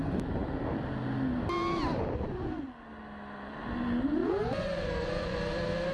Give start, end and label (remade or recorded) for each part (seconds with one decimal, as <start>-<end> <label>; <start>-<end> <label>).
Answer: 0.0-4.2 recorded; 4.2-5.4 remade; 5.4-5.9 recorded